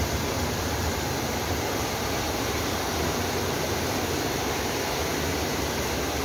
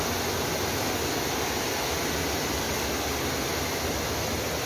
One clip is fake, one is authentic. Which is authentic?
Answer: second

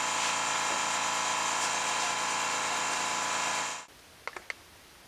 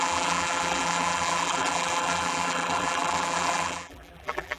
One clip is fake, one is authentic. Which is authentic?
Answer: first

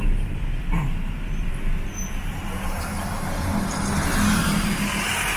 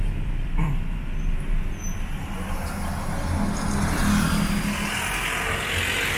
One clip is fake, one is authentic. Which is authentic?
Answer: second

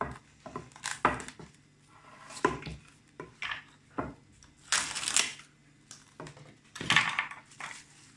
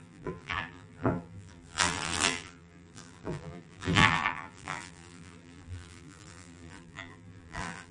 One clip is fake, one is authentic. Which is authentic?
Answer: first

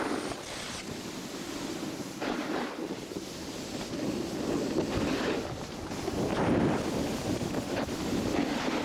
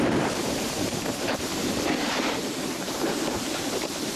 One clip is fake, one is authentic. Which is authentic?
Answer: first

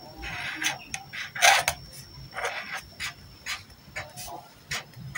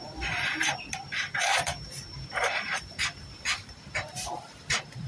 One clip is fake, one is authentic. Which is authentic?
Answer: first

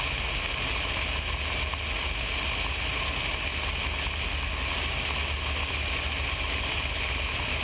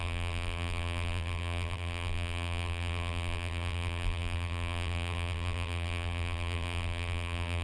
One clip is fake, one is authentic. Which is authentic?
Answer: first